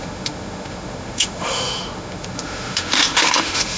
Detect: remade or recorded remade